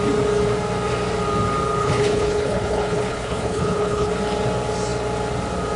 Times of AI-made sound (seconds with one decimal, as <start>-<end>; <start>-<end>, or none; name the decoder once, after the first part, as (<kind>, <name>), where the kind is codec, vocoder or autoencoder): 1.8-4.1 (codec, HILCodec)